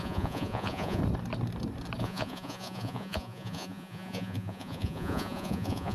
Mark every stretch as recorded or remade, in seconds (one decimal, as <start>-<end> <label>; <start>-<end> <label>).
0.0-1.0 remade; 1.0-2.0 recorded; 2.0-5.9 remade